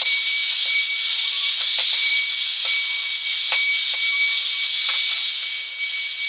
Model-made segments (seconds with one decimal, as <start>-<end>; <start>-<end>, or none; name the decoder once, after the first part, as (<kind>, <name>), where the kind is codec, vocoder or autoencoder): 0.0-0.4 (vocoder, BigVGAN v2); 1.3-2.1